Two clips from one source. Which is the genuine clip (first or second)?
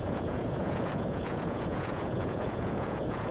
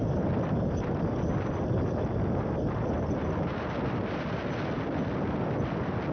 second